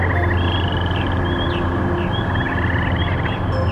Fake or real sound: real